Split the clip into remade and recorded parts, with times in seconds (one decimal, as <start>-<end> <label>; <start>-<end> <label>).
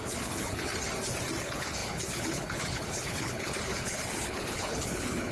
0.0-0.7 remade; 0.7-1.4 recorded; 1.4-5.3 remade